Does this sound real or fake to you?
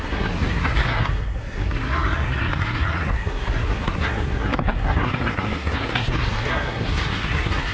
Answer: fake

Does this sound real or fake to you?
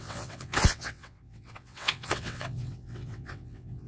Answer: fake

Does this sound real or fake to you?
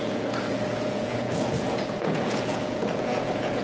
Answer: fake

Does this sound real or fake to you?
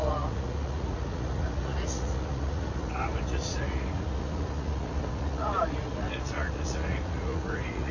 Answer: fake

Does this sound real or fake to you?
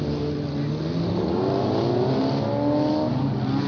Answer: real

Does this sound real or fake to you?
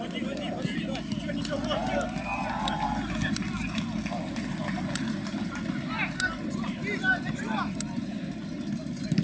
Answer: real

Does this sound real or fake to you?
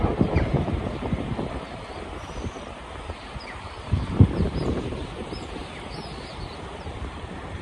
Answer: fake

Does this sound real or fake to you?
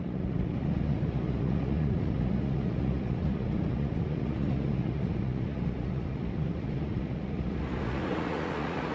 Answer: fake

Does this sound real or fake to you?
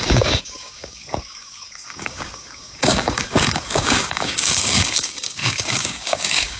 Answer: fake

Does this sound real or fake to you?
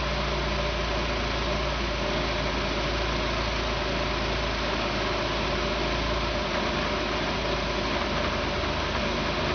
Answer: real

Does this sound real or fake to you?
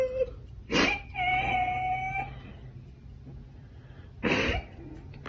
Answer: real